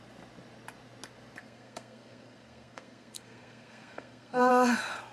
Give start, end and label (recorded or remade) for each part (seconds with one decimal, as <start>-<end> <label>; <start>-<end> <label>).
0.0-1.4 recorded; 1.4-4.5 remade; 4.5-5.1 recorded